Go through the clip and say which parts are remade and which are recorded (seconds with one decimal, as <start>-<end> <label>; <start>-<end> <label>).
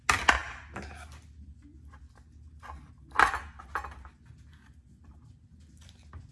0.0-6.3 recorded